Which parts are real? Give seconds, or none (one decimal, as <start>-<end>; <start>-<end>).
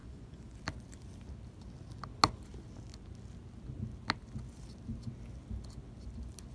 0.6-6.5